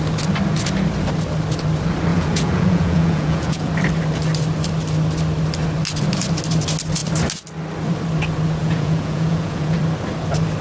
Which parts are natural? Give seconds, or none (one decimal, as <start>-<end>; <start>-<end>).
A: 0.0-2.1; 3.7-8.6; 9.8-10.6